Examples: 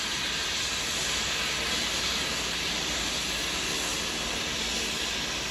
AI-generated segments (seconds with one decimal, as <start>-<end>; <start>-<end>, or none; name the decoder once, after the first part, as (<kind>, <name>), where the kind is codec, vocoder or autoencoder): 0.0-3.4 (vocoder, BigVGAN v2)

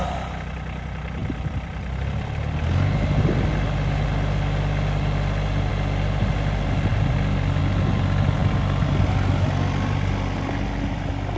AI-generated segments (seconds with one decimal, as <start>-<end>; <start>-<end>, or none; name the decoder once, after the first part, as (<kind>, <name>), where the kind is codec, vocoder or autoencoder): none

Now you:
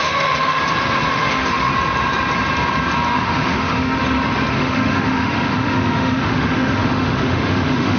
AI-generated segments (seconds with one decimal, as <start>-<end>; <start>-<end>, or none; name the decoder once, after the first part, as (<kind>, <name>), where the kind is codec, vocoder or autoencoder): 0.0-0.6 (autoencoder, DAC-VAE); 1.1-1.7; 3.1-4.0; 4.5-8.0